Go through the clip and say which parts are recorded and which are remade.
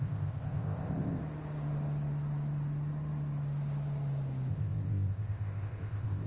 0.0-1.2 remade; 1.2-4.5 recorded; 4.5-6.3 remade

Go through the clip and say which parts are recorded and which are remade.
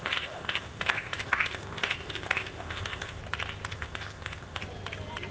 0.0-3.2 remade; 3.2-3.7 recorded; 3.7-4.6 remade; 4.6-5.3 recorded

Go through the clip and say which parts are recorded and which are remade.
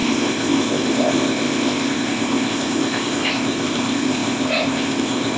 0.0-5.4 remade